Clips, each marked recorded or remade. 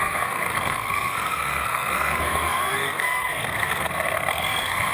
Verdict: remade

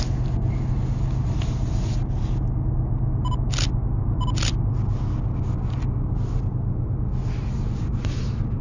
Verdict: recorded